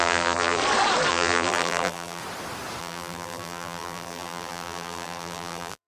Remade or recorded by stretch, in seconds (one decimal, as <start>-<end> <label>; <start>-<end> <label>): 0.0-0.6 remade; 0.6-1.1 recorded; 1.1-2.2 remade; 2.2-2.8 recorded; 2.8-5.9 remade